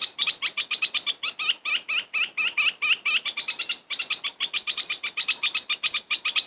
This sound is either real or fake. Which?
real